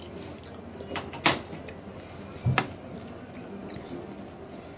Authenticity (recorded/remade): recorded